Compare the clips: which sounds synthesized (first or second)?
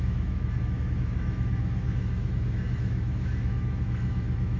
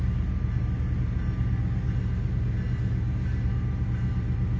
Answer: first